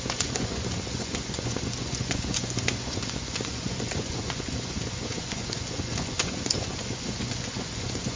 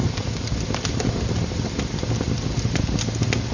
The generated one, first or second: first